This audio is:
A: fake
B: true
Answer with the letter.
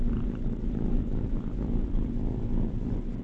A